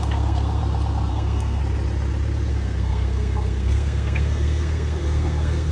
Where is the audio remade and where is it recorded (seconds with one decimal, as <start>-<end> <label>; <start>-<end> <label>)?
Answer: 0.0-0.6 remade; 0.6-1.1 recorded; 1.1-1.6 remade; 1.6-2.5 recorded; 2.5-5.7 remade